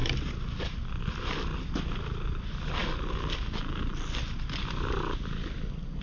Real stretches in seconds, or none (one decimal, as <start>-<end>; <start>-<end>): 0.0-6.0